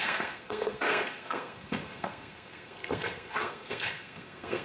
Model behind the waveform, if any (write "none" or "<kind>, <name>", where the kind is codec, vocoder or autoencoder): codec, SNAC